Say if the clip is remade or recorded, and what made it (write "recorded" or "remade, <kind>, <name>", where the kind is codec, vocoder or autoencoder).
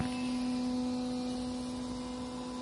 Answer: recorded